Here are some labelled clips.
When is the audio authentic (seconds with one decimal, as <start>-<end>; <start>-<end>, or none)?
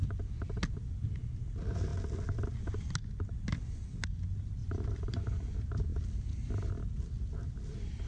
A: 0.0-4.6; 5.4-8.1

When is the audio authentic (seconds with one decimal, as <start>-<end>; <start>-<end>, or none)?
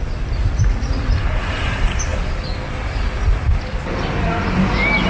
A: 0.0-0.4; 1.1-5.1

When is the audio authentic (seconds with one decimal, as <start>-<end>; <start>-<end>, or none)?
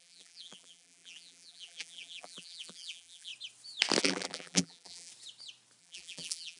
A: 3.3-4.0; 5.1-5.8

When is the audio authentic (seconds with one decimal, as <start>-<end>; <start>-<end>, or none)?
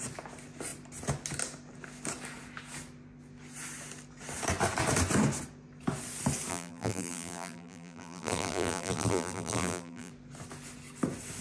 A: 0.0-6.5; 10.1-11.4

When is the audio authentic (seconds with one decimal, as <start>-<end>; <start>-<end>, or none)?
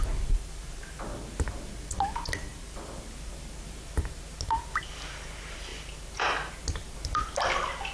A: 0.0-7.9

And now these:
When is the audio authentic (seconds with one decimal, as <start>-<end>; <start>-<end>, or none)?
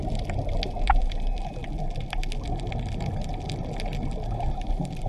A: 0.0-5.1